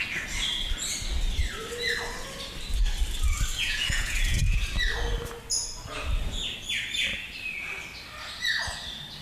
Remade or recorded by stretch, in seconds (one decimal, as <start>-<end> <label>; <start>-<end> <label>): 0.0-3.5 recorded; 3.5-4.6 remade; 4.6-9.2 recorded